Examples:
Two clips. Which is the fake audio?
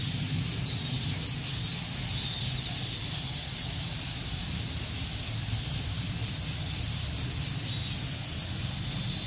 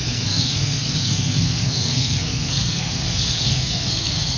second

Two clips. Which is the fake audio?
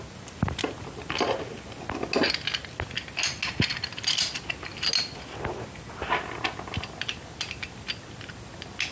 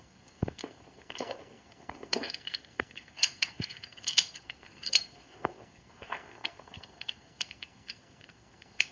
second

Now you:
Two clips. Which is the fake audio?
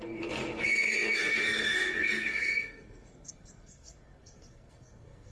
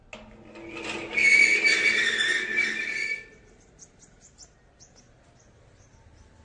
first